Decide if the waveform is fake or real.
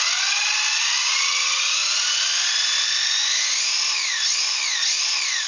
real